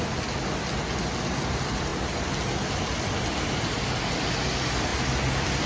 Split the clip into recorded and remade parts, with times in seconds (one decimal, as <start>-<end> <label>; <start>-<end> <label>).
0.0-5.7 recorded

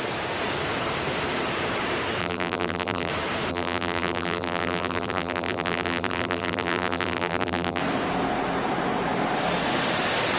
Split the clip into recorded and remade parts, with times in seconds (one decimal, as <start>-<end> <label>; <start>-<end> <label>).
0.0-2.2 recorded; 2.2-3.1 remade; 3.1-3.5 recorded; 3.5-7.8 remade; 7.8-10.4 recorded

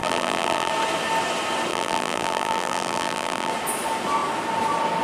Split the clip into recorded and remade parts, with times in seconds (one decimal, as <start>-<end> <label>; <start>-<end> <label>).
0.0-0.7 remade; 0.7-1.7 recorded; 1.7-3.5 remade; 3.5-5.0 recorded